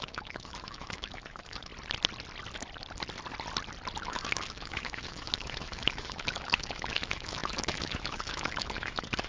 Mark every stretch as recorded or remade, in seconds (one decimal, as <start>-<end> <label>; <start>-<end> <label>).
0.0-1.7 remade; 1.7-4.1 recorded; 4.1-9.3 remade